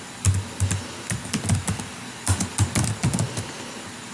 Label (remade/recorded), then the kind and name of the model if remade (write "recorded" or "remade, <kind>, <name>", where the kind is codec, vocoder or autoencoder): recorded